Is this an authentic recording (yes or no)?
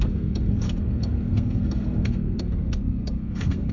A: no